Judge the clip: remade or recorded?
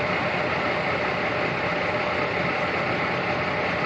recorded